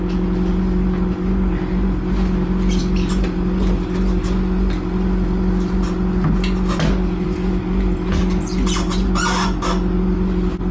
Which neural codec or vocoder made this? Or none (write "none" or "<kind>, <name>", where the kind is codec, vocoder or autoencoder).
none